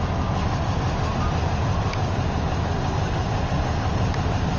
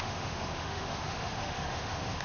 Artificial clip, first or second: second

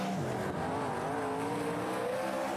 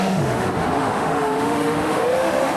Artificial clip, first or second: second